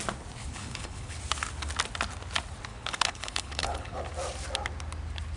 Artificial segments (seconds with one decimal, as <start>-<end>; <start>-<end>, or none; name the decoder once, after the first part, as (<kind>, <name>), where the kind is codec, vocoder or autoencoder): 0.4-1.2 (codec, HILCodec); 2.7-4.0